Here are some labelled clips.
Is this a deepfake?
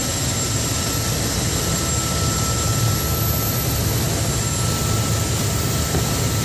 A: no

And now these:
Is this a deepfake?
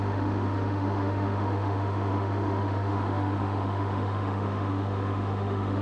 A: yes